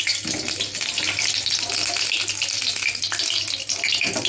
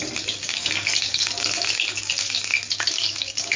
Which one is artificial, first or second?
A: second